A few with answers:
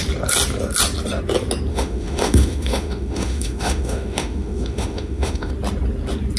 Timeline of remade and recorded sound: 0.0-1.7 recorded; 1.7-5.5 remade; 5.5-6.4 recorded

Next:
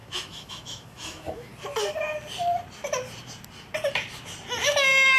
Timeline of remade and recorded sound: 0.0-1.5 remade; 1.5-4.6 recorded; 4.6-5.2 remade

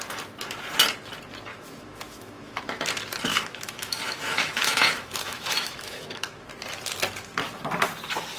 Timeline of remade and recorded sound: 0.0-1.5 recorded; 1.5-2.6 remade; 2.6-3.3 recorded; 3.3-6.5 remade; 6.5-8.4 recorded

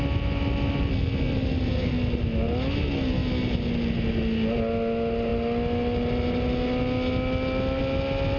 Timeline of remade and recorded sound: 0.0-8.4 recorded

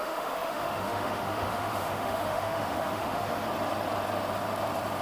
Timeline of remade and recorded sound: 0.0-3.5 remade; 3.5-5.0 recorded

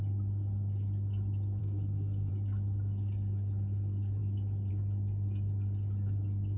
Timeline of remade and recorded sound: 0.0-1.6 recorded; 1.6-2.3 remade; 2.3-6.6 recorded